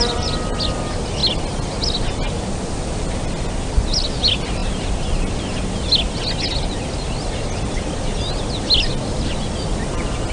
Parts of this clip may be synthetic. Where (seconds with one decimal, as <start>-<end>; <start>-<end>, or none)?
none